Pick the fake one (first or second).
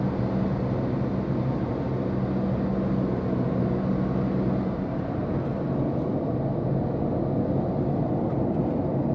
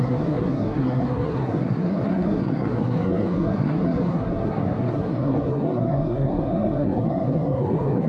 second